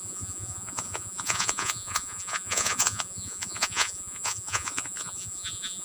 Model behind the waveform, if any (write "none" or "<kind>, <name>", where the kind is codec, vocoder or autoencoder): vocoder, Vocos